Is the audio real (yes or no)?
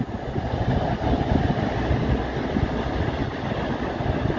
yes